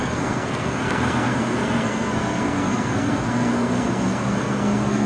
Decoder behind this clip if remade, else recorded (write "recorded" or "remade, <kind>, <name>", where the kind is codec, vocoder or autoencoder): remade, codec, SNAC